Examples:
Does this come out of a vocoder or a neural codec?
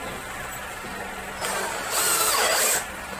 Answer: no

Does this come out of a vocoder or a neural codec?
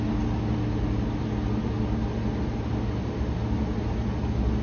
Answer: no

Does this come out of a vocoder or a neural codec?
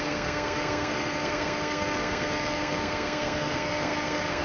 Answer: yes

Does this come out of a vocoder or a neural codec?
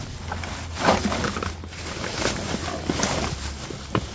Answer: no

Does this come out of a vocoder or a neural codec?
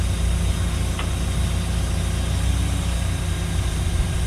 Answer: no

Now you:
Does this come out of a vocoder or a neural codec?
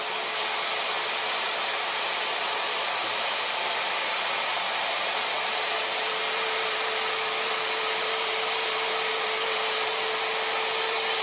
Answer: yes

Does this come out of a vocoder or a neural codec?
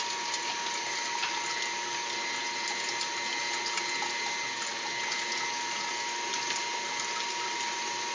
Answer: no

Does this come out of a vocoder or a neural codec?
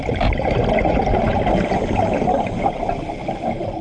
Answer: yes